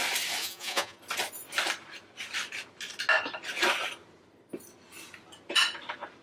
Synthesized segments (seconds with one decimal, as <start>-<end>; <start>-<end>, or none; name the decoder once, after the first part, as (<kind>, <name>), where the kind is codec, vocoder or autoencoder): 0.4-1.0 (vocoder, Vocos)

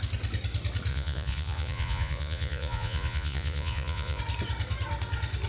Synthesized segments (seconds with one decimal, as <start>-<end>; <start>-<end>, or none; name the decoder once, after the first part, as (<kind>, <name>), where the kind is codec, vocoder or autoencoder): 0.9-4.2 (vocoder, Vocos)

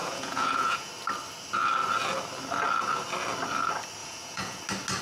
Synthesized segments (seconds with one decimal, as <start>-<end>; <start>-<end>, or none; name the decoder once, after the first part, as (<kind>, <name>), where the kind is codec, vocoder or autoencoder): 0.0-0.9 (vocoder, Vocos); 4.0-4.6

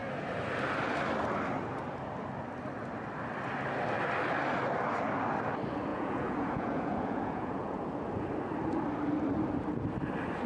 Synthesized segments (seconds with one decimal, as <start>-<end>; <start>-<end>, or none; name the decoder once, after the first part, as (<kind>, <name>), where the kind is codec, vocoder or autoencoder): 5.9-7.8 (vocoder, Vocos)

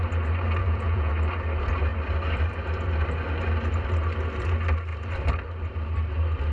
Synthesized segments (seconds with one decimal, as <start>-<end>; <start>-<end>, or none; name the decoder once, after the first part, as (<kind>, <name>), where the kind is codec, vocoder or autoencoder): 0.6-1.1 (vocoder, Vocos)

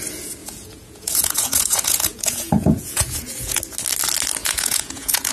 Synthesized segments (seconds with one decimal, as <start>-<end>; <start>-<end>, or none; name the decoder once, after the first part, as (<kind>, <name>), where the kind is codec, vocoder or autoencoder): 0.4-3.6 (vocoder, Vocos); 4.4-5.3